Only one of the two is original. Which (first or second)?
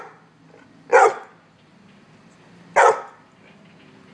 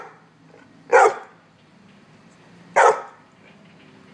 first